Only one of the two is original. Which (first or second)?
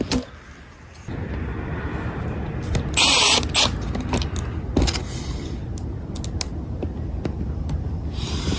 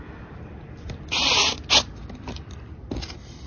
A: first